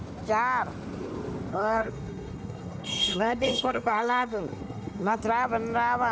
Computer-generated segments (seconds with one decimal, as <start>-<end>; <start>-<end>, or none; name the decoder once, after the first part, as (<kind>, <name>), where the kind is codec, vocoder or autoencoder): 1.5-5.2 (codec, SNAC)